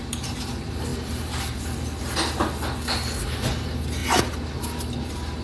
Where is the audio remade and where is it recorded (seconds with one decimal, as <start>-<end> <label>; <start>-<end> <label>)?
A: 0.0-0.9 recorded; 0.9-2.0 remade; 2.0-5.4 recorded